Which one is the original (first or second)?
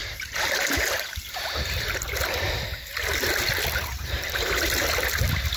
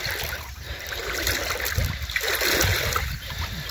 second